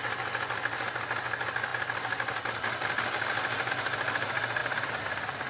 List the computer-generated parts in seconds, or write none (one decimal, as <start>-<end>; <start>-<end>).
4.6-5.5